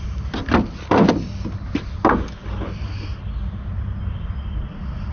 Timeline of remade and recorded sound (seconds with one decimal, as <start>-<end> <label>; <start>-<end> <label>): 0.0-5.1 recorded